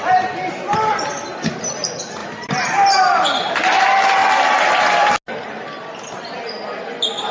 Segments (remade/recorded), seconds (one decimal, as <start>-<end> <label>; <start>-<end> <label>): 0.0-2.2 recorded; 2.2-3.5 remade; 3.5-4.2 recorded; 4.2-5.1 remade; 5.1-7.3 recorded